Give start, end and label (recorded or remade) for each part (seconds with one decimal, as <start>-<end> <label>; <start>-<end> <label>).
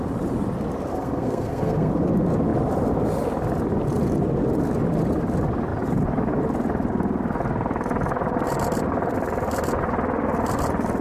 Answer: 0.0-0.9 recorded; 0.9-1.9 remade; 1.9-11.0 recorded